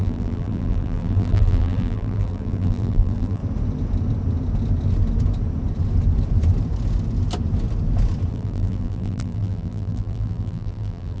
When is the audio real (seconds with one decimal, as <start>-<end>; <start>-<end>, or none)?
3.4-8.3